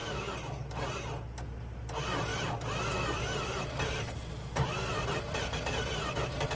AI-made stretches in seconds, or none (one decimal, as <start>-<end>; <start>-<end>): 2.3-6.1